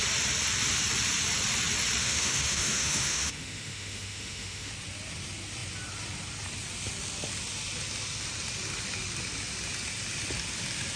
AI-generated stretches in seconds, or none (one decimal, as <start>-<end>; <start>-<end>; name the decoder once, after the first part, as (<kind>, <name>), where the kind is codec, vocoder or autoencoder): 2.0-4.7 (autoencoder, DAC-VAE)